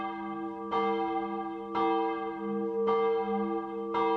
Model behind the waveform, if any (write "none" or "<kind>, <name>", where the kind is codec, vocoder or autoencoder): none